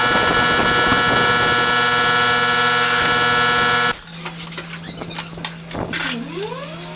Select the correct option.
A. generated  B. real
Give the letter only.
B